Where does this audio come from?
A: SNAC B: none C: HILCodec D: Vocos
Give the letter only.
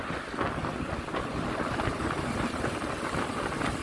B